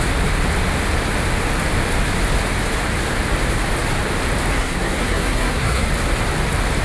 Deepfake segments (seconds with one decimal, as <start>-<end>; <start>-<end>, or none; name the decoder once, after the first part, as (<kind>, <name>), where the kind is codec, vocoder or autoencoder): 4.5-5.9 (codec, SNAC)